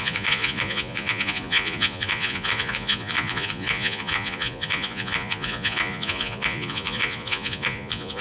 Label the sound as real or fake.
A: fake